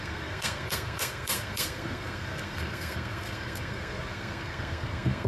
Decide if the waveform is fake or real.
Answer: fake